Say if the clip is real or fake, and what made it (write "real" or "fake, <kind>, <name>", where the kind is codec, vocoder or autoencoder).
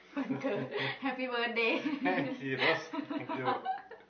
real